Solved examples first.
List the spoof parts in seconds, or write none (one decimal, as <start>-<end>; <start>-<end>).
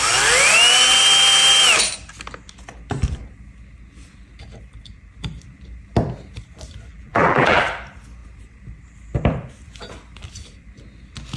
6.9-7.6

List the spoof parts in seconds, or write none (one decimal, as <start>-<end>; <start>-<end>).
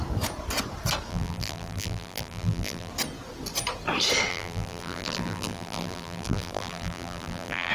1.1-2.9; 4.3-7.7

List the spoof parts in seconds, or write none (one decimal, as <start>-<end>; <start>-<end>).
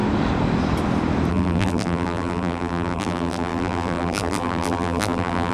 1.3-5.5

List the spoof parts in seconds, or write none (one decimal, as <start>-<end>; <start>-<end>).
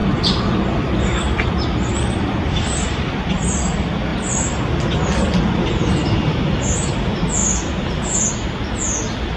0.0-2.6; 4.1-6.4; 7.4-8.7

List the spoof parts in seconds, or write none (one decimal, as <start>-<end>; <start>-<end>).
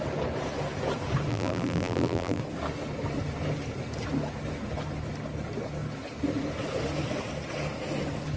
1.3-2.4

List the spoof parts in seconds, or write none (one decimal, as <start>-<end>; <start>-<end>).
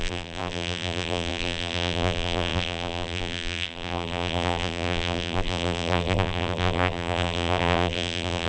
0.0-8.5